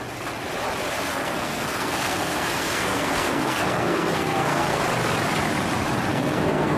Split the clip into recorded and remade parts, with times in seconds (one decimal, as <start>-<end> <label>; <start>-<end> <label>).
0.0-1.1 recorded; 1.1-4.8 remade; 4.8-6.1 recorded; 6.1-6.8 remade